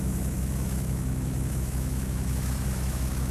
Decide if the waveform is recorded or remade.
remade